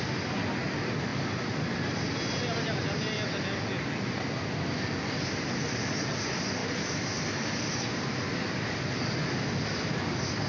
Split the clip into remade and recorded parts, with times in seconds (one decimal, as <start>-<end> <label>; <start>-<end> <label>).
0.0-10.5 recorded